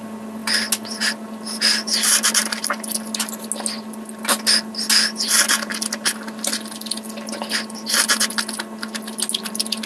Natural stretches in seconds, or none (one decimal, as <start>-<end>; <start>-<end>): 0.0-9.9